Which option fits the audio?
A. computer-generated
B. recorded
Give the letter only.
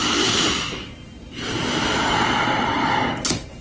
B